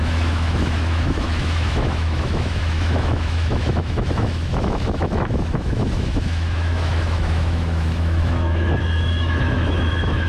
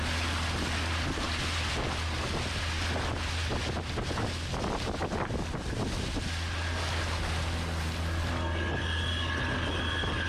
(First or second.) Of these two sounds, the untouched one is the second